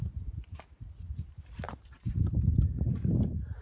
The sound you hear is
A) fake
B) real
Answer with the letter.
A